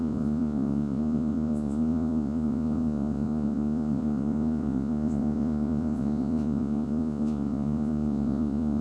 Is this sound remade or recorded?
remade